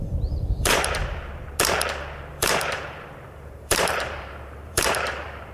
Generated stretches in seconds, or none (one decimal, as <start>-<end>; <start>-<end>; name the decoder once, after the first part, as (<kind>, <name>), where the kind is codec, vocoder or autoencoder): 0.0-1.0 (vocoder, BigVGAN v2); 2.3-5.5